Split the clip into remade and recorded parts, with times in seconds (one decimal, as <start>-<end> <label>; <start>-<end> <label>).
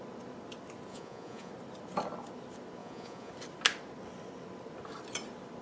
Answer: 0.0-0.9 recorded; 0.9-1.5 remade; 1.5-2.8 recorded; 2.8-3.3 remade; 3.3-5.6 recorded